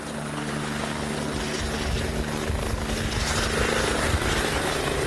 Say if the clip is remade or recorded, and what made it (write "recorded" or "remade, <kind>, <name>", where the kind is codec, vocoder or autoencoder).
recorded